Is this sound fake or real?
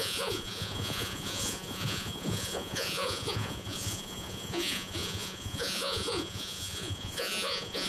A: fake